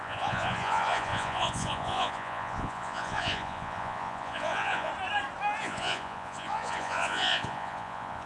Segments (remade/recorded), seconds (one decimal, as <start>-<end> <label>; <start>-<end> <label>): 0.0-4.9 remade; 4.9-5.6 recorded; 5.6-8.3 remade